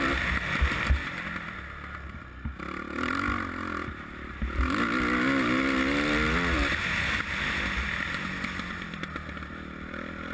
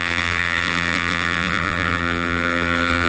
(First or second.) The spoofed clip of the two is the second